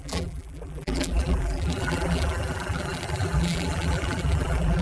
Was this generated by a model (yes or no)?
yes